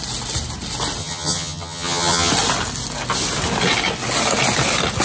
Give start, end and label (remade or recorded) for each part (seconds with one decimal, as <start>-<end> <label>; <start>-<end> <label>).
0.0-1.0 recorded; 1.0-2.3 remade; 2.3-5.0 recorded